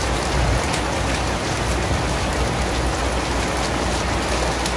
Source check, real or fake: real